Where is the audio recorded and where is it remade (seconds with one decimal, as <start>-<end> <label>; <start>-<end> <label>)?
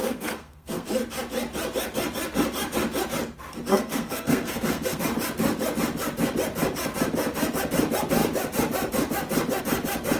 0.0-0.9 remade; 0.9-3.7 recorded; 3.7-5.0 remade; 5.0-10.2 recorded